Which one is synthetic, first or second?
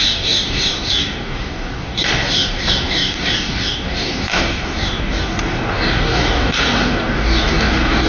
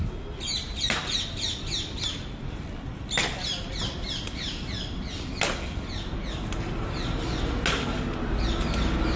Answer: first